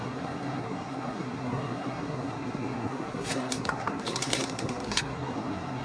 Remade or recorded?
remade